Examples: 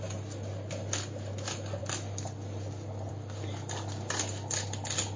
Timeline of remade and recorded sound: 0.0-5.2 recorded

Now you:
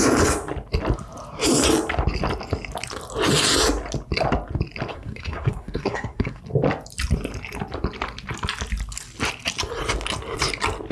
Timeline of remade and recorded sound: 0.0-4.9 recorded; 4.9-6.4 remade; 6.4-10.9 recorded

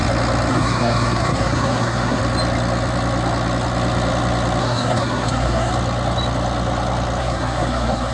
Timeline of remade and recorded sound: 0.0-0.5 recorded; 0.5-2.2 remade; 2.2-4.6 recorded; 4.6-5.7 remade; 5.7-7.2 recorded; 7.2-8.1 remade

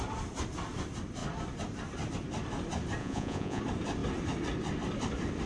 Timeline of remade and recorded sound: 0.0-3.0 recorded; 3.0-3.6 remade; 3.6-5.5 recorded

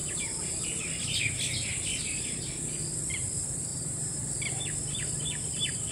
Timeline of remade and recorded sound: 0.0-0.8 remade; 0.8-3.7 recorded; 3.7-4.3 remade; 4.3-5.9 recorded

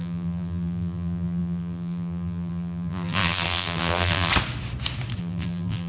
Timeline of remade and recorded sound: 0.0-4.3 remade; 4.3-5.2 recorded; 5.2-5.9 remade